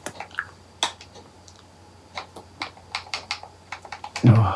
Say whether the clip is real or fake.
real